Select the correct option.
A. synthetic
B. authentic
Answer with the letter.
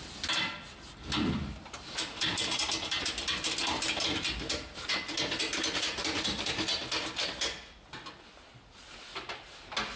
B